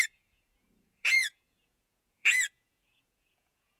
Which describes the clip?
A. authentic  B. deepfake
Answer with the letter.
B